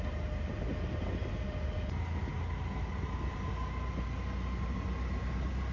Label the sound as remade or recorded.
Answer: recorded